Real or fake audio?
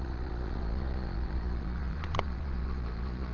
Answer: fake